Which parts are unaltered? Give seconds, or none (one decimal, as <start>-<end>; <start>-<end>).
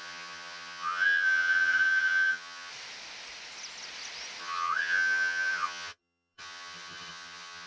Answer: 2.7-4.4